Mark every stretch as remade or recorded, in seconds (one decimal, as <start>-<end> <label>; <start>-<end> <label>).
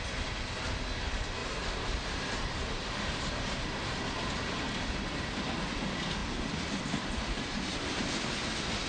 0.0-1.4 recorded; 1.4-4.0 remade; 4.0-8.9 recorded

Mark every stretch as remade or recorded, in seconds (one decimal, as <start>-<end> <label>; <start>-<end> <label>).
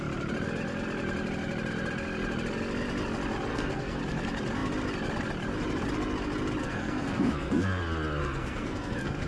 0.0-3.5 recorded; 3.5-4.0 remade; 4.0-6.6 recorded; 6.6-7.8 remade; 7.8-8.2 recorded; 8.2-9.3 remade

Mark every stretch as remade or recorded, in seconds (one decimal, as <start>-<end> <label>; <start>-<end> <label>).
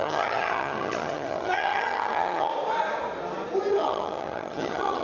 0.0-2.5 remade; 2.5-3.7 recorded; 3.7-5.0 remade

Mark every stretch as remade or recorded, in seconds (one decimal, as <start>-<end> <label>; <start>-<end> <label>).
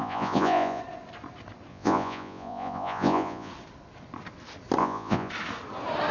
0.0-0.8 remade; 0.8-1.7 recorded; 1.7-3.5 remade; 3.5-4.8 recorded; 4.8-5.3 remade; 5.3-6.1 recorded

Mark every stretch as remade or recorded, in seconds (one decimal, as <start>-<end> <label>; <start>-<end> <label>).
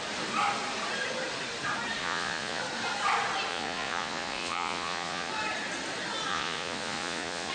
0.0-2.0 recorded; 2.0-2.6 remade; 2.6-3.5 recorded; 3.5-5.3 remade; 5.3-6.3 recorded; 6.3-7.5 remade